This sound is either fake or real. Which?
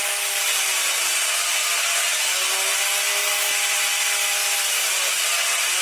real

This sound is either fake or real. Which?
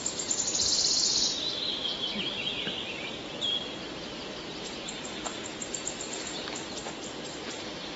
real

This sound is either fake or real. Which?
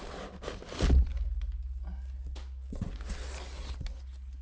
real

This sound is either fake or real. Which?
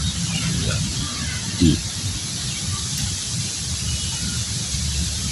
real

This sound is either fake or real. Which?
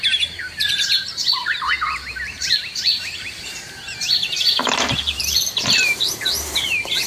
fake